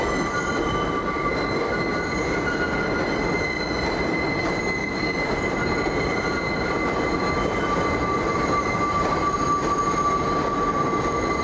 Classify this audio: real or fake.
real